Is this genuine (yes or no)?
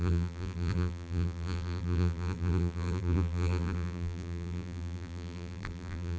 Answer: no